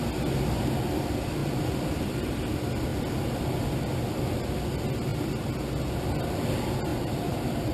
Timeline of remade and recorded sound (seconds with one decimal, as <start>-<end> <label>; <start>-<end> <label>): 0.0-1.4 recorded; 1.4-2.3 remade; 2.3-6.9 recorded; 6.9-7.7 remade